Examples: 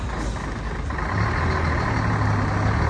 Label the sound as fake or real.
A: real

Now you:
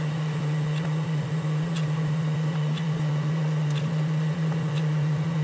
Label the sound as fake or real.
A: fake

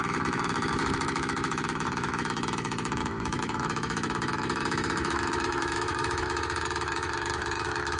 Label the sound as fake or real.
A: fake